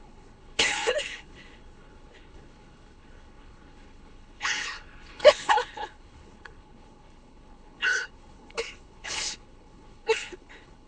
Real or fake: fake